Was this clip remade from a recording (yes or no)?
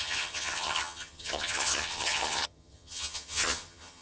yes